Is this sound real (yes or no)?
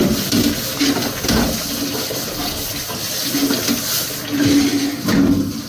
yes